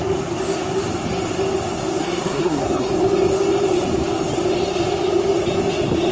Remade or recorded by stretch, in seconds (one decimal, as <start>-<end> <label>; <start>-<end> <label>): 0.0-2.0 recorded; 2.0-2.9 remade; 2.9-6.1 recorded

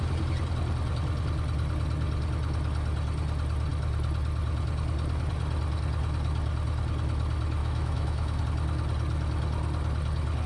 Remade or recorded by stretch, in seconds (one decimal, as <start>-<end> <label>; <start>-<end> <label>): 0.0-7.6 recorded; 7.6-8.4 remade; 8.4-10.5 recorded

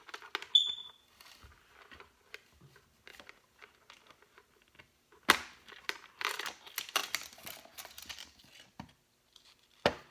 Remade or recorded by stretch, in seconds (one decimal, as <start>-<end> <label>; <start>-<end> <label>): 0.0-10.1 recorded

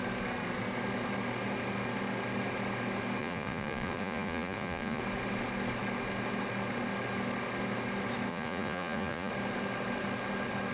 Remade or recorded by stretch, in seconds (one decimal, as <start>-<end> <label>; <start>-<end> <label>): 0.0-3.2 recorded; 3.2-5.0 remade; 5.0-8.3 recorded; 8.3-9.3 remade; 9.3-10.7 recorded

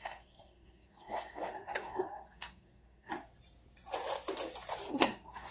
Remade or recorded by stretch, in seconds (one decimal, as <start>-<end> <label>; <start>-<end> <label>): 0.0-3.1 remade; 3.1-4.9 recorded; 4.9-5.5 remade

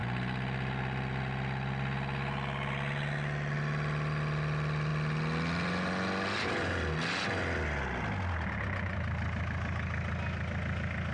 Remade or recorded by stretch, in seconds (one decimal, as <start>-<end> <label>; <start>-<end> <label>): 0.0-11.1 recorded

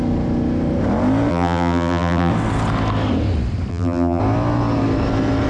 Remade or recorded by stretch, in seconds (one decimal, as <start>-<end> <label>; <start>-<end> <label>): 0.0-1.3 recorded; 1.3-2.3 remade; 2.3-3.7 recorded; 3.7-4.2 remade; 4.2-5.5 recorded

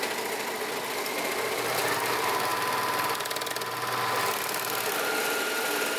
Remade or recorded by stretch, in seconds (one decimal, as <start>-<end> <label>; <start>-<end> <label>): 0.0-6.0 recorded